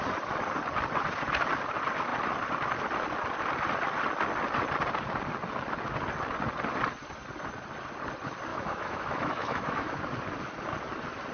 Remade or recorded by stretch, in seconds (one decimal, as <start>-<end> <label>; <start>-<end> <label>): 0.0-8.5 recorded; 8.5-10.0 remade; 10.0-11.3 recorded